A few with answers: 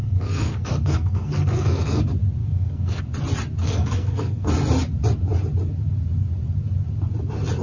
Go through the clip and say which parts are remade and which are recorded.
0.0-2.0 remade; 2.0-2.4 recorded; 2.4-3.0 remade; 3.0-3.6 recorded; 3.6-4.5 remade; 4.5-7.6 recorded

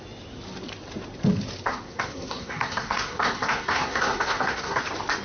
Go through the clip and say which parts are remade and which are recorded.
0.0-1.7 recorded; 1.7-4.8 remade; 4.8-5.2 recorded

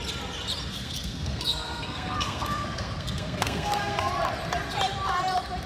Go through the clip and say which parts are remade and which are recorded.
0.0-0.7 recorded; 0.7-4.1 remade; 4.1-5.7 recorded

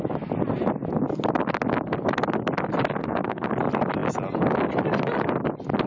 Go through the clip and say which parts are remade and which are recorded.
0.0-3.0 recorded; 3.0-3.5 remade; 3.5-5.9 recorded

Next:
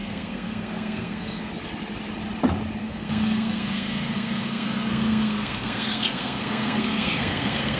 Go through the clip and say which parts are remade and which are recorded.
0.0-1.5 remade; 1.5-2.8 recorded; 2.8-7.8 remade